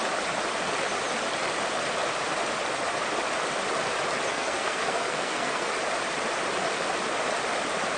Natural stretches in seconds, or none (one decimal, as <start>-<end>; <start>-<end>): 0.0-4.3; 5.7-8.0